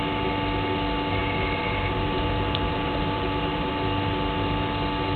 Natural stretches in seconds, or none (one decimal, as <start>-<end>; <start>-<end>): 0.0-1.2; 3.7-5.2